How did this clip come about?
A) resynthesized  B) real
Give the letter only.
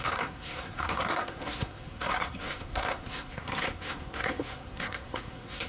A